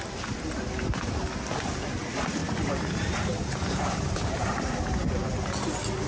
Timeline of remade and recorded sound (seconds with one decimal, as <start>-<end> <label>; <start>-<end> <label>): 0.0-2.4 recorded; 2.4-4.6 remade; 4.6-6.1 recorded